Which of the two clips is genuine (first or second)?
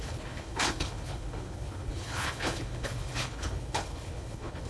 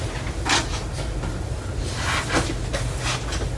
second